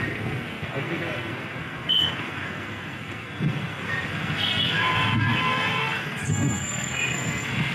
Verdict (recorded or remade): remade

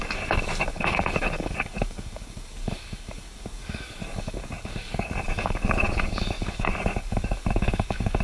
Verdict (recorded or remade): remade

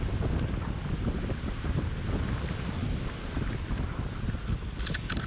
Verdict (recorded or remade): recorded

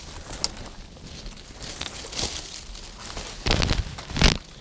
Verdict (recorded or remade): recorded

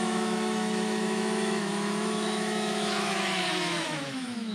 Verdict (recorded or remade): remade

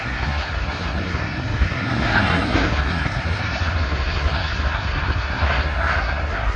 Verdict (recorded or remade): remade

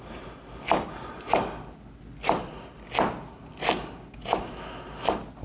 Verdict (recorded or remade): recorded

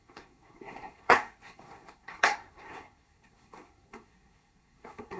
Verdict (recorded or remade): remade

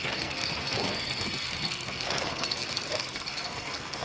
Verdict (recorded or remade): remade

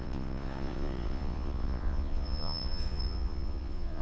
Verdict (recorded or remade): remade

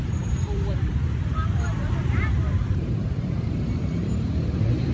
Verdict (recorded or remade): remade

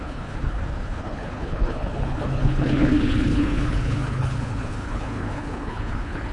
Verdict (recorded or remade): remade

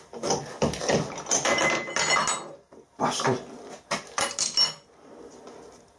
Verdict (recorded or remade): recorded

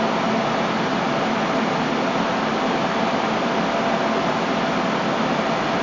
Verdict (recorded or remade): recorded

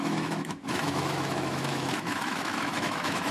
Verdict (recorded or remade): remade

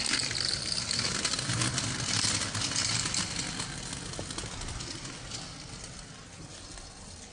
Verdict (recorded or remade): recorded